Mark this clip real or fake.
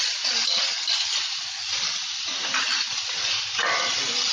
fake